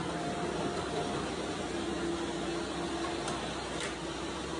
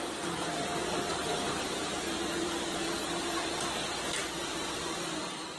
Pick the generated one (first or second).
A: second